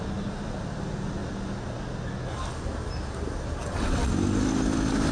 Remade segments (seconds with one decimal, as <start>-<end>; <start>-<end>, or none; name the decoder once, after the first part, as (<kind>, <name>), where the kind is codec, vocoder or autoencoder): 3.6-4.1 (vocoder, WaveNeXt)